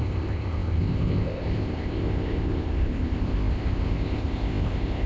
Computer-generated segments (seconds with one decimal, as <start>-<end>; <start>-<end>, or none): 0.0-5.1